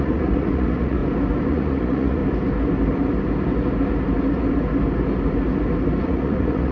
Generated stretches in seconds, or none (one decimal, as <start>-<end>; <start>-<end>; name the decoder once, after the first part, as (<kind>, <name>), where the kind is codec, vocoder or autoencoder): 0.0-1.0 (vocoder, Vocos); 1.5-2.2; 6.0-6.7